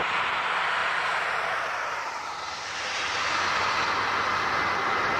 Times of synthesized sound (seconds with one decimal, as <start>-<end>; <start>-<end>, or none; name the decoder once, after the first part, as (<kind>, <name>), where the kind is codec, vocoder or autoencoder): 0.8-3.5 (vocoder, BigVGAN v2)